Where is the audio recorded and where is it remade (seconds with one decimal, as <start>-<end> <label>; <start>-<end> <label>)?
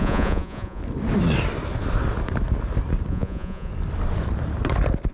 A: 0.0-0.8 remade; 0.8-3.1 recorded; 3.1-3.7 remade; 3.7-5.1 recorded